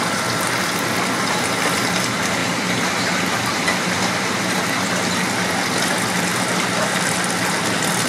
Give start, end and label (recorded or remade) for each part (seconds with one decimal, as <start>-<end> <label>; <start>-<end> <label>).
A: 0.0-2.4 recorded; 2.4-3.9 remade; 3.9-6.3 recorded; 6.3-7.5 remade; 7.5-8.1 recorded